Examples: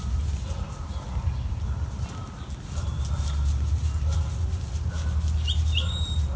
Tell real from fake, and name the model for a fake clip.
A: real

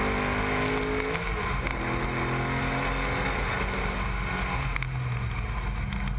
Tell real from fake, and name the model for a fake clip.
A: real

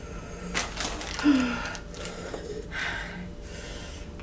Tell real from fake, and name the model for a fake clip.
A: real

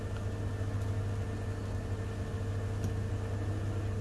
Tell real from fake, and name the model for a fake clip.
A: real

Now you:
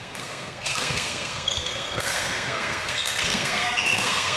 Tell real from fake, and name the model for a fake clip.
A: fake, codec, SNAC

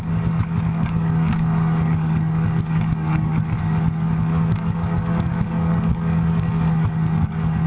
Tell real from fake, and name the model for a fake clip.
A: fake, codec, DAC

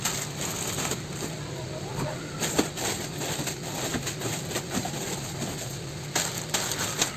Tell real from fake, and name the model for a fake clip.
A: real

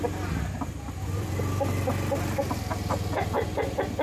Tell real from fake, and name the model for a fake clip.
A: real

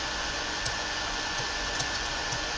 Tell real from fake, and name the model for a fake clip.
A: fake, vocoder, Vocos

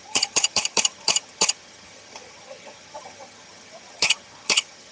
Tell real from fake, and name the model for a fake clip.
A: fake, vocoder, HiFi-GAN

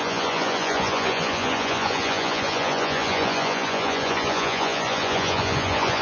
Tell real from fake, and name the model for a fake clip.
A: fake, vocoder, Vocos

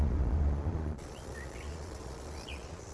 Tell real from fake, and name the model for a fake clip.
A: fake, vocoder, Vocos